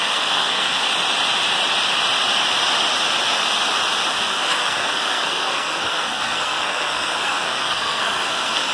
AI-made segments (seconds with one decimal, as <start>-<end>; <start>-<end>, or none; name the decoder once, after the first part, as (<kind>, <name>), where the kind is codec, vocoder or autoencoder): 0.0-0.8 (codec, SNAC); 4.1-8.7